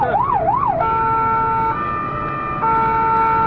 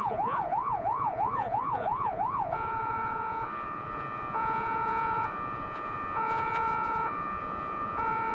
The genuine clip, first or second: first